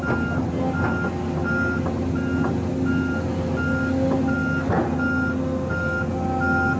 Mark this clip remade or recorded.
recorded